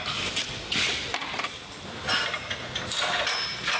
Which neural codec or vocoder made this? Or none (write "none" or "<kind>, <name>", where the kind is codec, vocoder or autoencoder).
none